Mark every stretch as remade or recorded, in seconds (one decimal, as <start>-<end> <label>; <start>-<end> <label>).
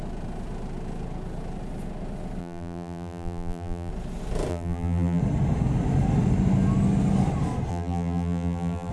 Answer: 0.0-2.4 recorded; 2.4-3.9 remade; 3.9-4.5 recorded; 4.5-5.2 remade; 5.2-7.7 recorded; 7.7-8.9 remade